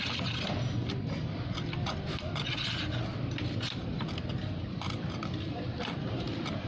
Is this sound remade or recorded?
recorded